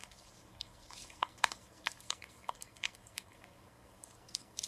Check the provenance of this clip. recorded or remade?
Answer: remade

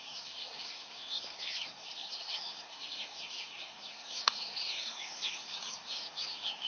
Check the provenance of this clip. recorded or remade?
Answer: remade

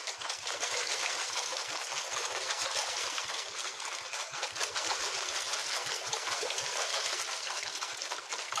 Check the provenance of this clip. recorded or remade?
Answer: remade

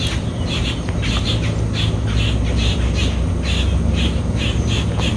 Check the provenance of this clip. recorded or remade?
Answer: recorded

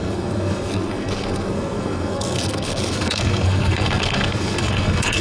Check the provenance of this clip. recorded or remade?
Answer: remade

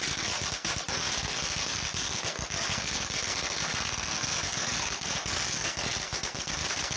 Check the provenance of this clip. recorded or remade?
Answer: remade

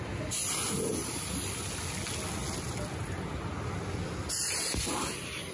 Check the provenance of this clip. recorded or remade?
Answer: recorded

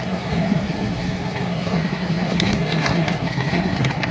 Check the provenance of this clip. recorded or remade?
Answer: remade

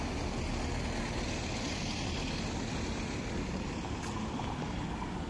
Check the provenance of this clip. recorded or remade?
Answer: recorded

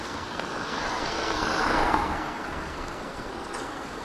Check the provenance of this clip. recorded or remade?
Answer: remade